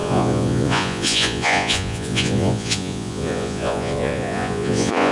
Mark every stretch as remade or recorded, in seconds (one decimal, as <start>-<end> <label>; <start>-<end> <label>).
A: 0.0-5.1 remade